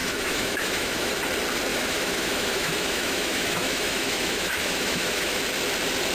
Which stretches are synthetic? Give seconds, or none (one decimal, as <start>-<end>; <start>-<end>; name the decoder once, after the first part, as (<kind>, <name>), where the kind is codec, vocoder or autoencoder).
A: 0.0-1.1 (autoencoder, DAC-VAE); 1.7-5.4